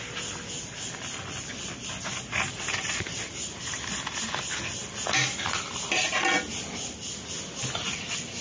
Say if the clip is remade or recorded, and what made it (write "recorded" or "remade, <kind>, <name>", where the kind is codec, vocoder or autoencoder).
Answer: recorded